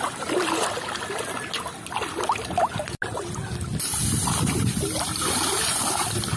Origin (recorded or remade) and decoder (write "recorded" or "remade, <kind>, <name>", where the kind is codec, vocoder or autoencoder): recorded